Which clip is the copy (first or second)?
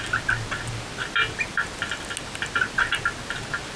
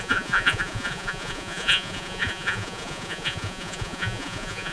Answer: second